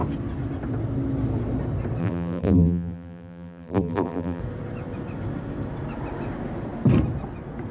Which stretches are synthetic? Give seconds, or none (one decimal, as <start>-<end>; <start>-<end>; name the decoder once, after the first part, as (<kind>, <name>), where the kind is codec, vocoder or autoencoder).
2.0-4.4 (vocoder, BigVGAN v2)